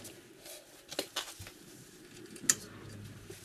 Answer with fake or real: real